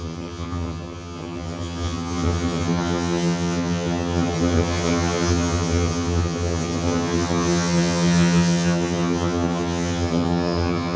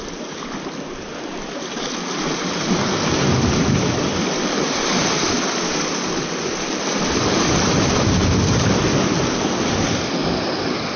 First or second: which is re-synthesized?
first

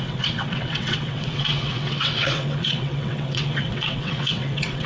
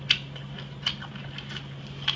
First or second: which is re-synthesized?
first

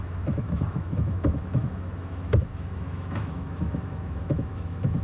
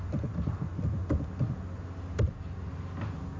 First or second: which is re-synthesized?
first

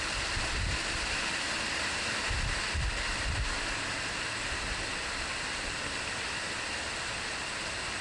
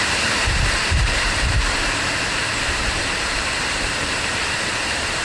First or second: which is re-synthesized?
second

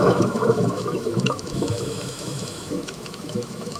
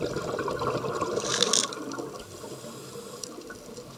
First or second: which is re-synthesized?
first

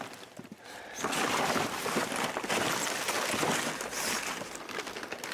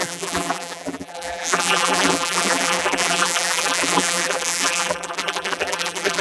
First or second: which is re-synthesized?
second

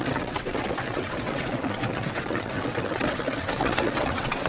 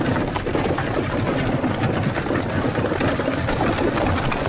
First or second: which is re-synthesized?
first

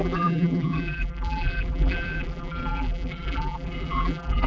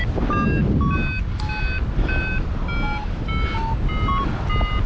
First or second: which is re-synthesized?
first